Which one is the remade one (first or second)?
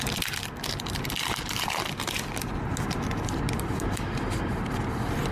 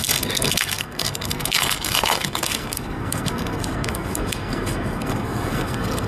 second